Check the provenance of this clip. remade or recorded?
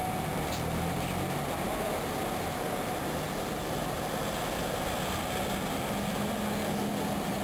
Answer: recorded